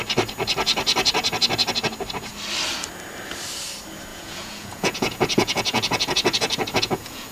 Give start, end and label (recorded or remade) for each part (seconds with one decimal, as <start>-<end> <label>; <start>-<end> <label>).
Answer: 0.0-4.1 recorded; 4.1-7.3 remade